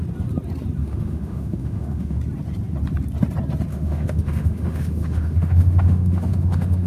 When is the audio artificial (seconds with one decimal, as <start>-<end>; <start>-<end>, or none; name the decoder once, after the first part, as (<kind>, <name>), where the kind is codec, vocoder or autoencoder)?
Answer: 0.8-2.2 (autoencoder, DAC-VAE); 3.7-6.9